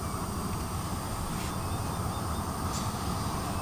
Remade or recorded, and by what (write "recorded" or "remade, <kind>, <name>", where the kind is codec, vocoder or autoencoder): recorded